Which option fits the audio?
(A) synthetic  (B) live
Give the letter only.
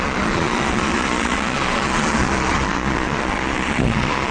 A